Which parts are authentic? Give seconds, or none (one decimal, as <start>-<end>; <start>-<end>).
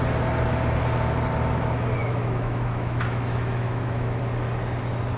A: 0.0-2.0; 4.2-5.2